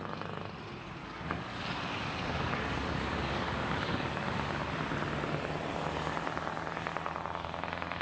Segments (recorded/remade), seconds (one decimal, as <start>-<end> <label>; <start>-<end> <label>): 0.0-1.0 recorded; 1.0-4.7 remade; 4.7-8.0 recorded

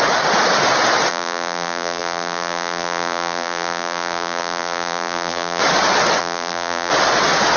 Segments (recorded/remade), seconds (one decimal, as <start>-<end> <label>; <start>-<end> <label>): 0.0-1.1 recorded; 1.1-5.6 remade; 5.6-6.2 recorded; 6.2-6.9 remade; 6.9-7.6 recorded

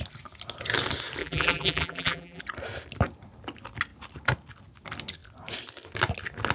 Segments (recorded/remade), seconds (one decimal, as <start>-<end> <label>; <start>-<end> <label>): 0.0-1.2 recorded; 1.2-2.4 remade; 2.4-6.5 recorded

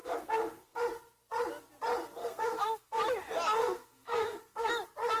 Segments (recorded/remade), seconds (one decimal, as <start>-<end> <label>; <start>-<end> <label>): 0.0-0.8 remade; 0.8-2.2 recorded; 2.2-3.0 remade; 3.0-3.6 recorded; 3.6-4.7 remade; 4.7-5.2 recorded

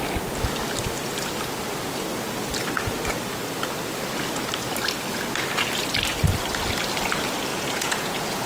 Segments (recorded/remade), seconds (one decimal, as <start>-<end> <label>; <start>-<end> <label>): 0.0-7.5 recorded; 7.5-8.5 remade

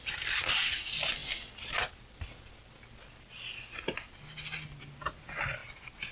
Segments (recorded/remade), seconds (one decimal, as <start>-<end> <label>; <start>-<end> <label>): 0.0-6.1 recorded